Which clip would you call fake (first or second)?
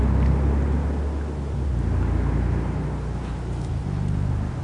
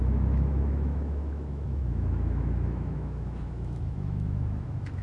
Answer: second